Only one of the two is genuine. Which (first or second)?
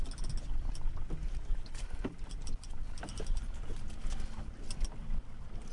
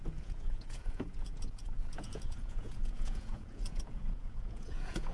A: first